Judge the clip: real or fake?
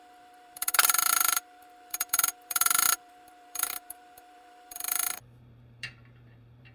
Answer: fake